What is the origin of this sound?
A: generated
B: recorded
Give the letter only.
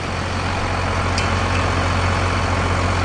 B